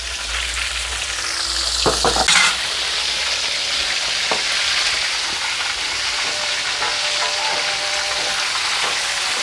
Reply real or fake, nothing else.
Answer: real